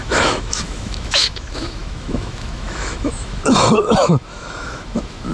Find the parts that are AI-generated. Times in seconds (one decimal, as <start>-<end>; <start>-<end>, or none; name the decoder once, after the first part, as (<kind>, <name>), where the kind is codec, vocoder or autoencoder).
0.0-5.3 (autoencoder, DAC-VAE)